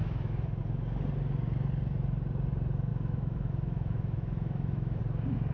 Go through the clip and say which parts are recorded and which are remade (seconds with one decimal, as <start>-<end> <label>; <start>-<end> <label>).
0.0-0.6 remade; 0.6-2.9 recorded; 2.9-5.0 remade; 5.0-5.5 recorded